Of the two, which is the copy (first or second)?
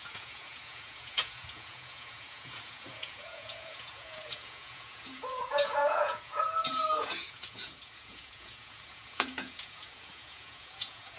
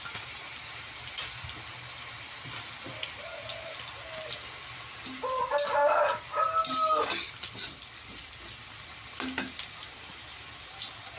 first